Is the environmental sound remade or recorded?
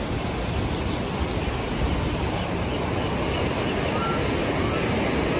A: recorded